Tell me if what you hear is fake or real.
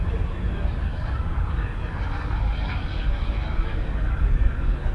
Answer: fake